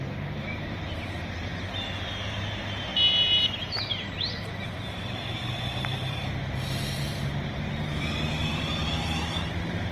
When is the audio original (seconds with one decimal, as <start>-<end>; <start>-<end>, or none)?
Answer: 2.9-3.6